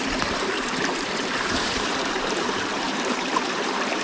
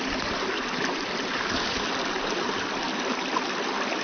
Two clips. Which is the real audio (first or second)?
second